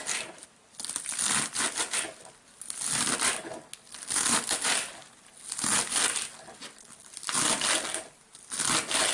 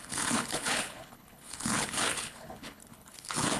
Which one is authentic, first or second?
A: first